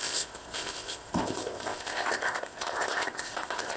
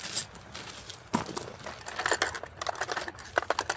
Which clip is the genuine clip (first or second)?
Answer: second